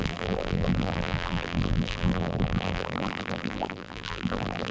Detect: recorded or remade remade